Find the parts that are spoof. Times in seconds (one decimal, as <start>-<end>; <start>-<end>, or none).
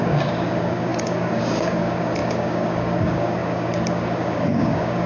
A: 0.0-5.1